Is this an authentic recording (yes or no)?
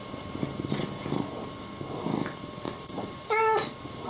yes